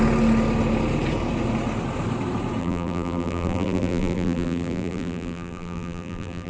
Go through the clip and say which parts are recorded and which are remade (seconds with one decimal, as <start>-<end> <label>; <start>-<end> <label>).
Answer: 0.0-2.6 recorded; 2.6-6.5 remade